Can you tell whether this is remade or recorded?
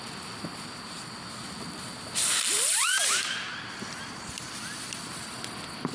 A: recorded